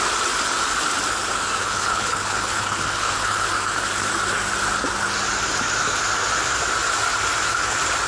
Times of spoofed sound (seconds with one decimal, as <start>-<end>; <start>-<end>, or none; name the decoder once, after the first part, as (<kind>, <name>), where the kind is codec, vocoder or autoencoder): 1.6-3.5 (codec, HILCodec)